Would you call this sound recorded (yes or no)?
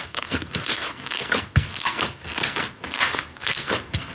no